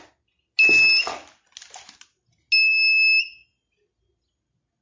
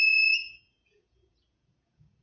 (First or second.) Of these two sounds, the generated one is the second